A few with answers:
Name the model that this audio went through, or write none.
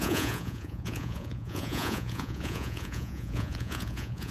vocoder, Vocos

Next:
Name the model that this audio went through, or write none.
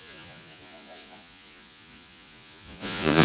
vocoder, Vocos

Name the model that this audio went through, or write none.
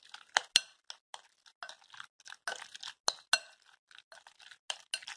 none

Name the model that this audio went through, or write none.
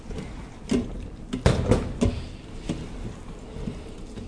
none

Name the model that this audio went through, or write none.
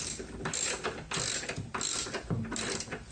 none